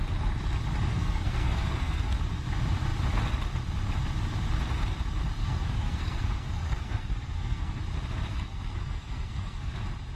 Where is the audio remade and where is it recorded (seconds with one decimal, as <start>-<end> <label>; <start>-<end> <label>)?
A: 0.0-0.9 recorded; 0.9-2.2 remade; 2.2-5.4 recorded; 5.4-7.8 remade; 7.8-8.3 recorded; 8.3-9.7 remade; 9.7-10.2 recorded